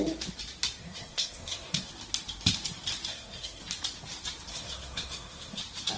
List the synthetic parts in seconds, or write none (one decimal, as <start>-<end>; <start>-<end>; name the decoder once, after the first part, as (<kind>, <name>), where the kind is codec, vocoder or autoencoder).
0.8-1.9 (codec, SNAC); 3.1-3.6; 4.5-5.6